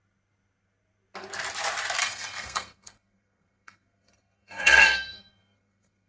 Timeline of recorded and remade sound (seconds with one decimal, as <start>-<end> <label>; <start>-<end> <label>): 0.0-2.0 recorded; 2.0-6.1 remade